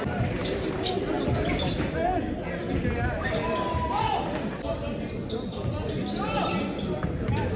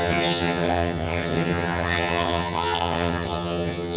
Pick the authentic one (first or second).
first